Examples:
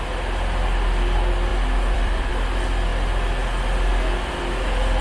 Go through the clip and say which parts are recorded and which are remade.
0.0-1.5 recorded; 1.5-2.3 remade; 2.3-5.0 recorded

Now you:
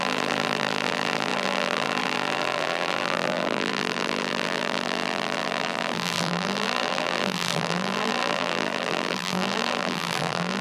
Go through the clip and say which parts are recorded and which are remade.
0.0-10.6 remade